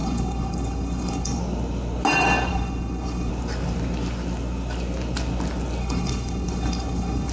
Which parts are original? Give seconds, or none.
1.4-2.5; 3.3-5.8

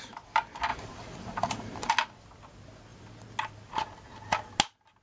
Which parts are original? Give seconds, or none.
0.0-0.7; 1.9-5.0

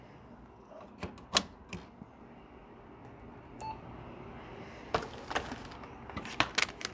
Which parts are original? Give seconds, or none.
0.0-6.9

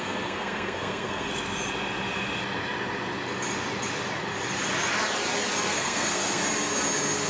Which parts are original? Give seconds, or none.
1.3-5.7; 6.4-7.3

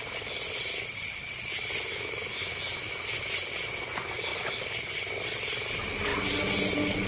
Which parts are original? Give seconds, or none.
0.0-1.9; 3.2-7.1